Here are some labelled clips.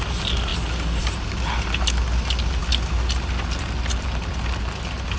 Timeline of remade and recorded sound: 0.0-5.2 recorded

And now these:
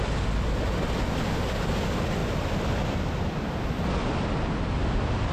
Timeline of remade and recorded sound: 0.0-5.3 recorded

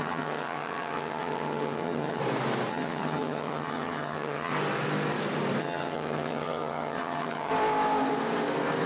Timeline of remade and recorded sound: 0.0-2.2 remade; 2.2-2.7 recorded; 2.7-4.5 remade; 4.5-5.6 recorded; 5.6-7.5 remade; 7.5-8.9 recorded

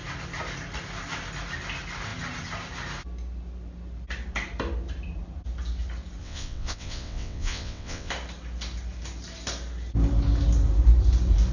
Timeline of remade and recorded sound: 0.0-6.2 recorded; 6.2-8.1 remade; 8.1-11.5 recorded

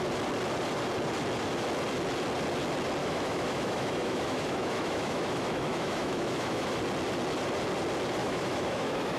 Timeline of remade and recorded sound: 0.0-3.0 recorded; 3.0-6.8 remade; 6.8-8.2 recorded; 8.2-9.2 remade

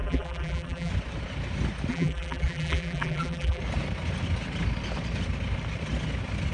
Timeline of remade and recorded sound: 0.0-0.9 remade; 0.9-1.9 recorded; 1.9-3.6 remade; 3.6-6.5 recorded

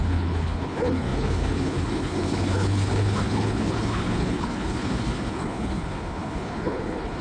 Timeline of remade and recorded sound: 0.0-7.2 remade

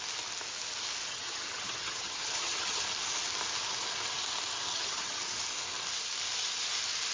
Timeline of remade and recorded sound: 0.0-1.1 recorded; 1.1-2.8 remade; 2.8-4.7 recorded; 4.7-5.2 remade; 5.2-7.1 recorded